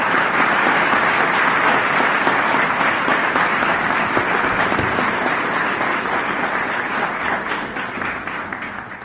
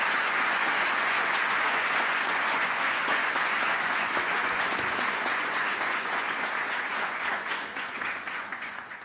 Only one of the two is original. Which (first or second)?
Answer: first